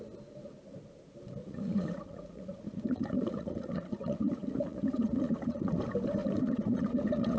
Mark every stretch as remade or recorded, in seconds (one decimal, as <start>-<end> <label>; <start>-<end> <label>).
0.0-1.4 recorded; 1.4-5.8 remade; 5.8-6.2 recorded; 6.2-7.4 remade